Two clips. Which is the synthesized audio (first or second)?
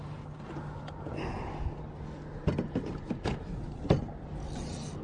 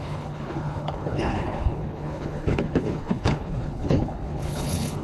second